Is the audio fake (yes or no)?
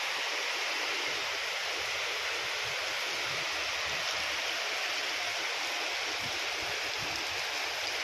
no